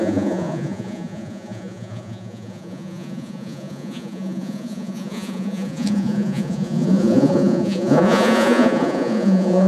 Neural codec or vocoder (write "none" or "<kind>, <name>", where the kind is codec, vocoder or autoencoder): vocoder, Vocos